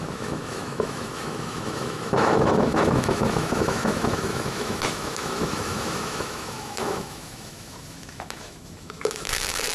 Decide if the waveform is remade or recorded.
remade